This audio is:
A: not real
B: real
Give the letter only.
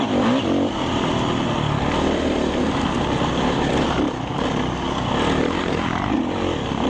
B